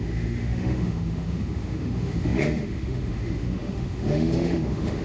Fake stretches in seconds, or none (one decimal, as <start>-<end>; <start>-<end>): 0.0-5.0